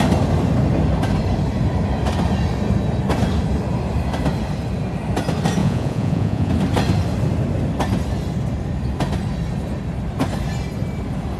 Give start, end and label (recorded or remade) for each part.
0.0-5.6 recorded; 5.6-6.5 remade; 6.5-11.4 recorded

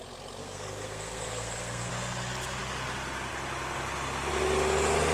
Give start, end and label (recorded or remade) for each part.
0.0-0.4 recorded; 0.4-1.9 remade; 1.9-5.1 recorded

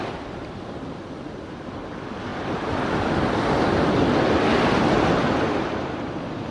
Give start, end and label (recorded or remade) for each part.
0.0-6.5 recorded

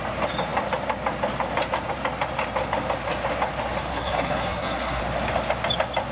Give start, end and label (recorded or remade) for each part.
0.0-3.9 recorded; 3.9-5.0 remade; 5.0-6.1 recorded

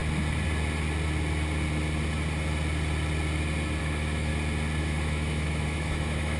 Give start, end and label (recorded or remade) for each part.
0.0-3.8 recorded; 3.8-4.3 remade; 4.3-4.8 recorded; 4.8-6.4 remade

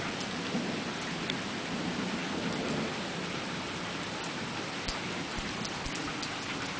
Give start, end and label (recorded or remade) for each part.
0.0-6.8 recorded

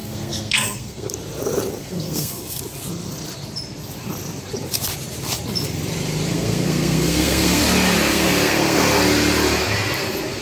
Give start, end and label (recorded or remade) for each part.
0.0-1.1 remade; 1.1-1.8 recorded; 1.8-2.6 remade; 2.6-6.3 recorded; 6.3-7.6 remade; 7.6-8.1 recorded; 8.1-8.8 remade; 8.8-10.4 recorded